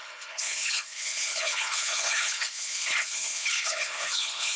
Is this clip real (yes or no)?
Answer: no